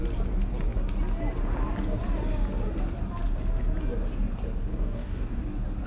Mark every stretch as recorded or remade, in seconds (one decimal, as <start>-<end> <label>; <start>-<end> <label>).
0.0-4.7 recorded; 4.7-5.4 remade; 5.4-5.9 recorded